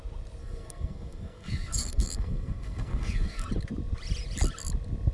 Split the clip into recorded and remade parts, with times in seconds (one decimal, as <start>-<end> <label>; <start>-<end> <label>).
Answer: 0.0-0.4 recorded; 0.4-3.5 remade; 3.5-5.1 recorded

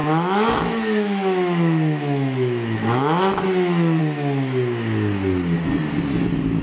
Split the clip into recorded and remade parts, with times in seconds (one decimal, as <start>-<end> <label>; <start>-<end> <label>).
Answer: 0.0-4.0 remade; 4.0-6.6 recorded